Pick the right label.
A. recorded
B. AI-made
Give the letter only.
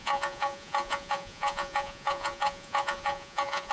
B